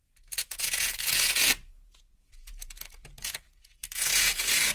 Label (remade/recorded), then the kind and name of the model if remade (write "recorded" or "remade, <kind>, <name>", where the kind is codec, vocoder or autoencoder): remade, vocoder, Vocos